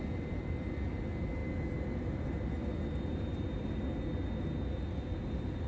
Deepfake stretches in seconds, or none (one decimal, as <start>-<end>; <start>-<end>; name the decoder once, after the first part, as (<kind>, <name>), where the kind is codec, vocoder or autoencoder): none